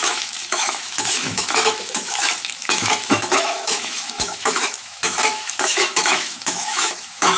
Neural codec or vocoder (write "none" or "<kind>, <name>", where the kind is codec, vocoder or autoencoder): autoencoder, DAC-VAE